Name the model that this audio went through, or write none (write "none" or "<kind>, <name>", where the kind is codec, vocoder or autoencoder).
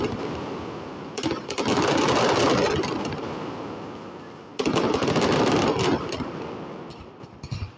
none